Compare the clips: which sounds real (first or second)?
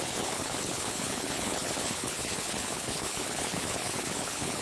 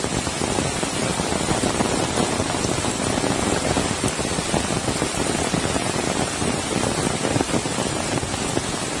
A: second